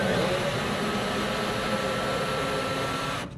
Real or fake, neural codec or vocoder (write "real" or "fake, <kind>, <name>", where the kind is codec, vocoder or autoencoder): real